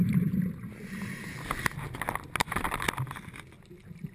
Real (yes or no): yes